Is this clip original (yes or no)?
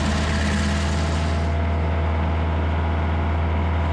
yes